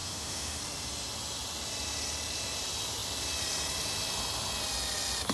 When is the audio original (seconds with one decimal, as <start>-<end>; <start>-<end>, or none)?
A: 0.6-5.3